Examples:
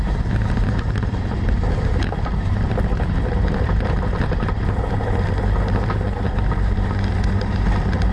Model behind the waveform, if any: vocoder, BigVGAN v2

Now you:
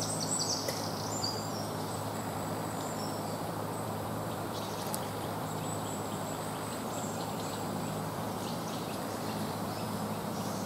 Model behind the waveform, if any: vocoder, BigVGAN v2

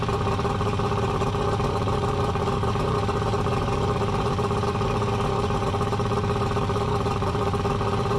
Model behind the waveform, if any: vocoder, BigVGAN v2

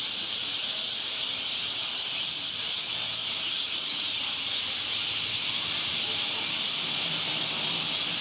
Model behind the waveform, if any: none